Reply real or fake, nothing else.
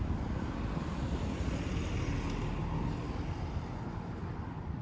real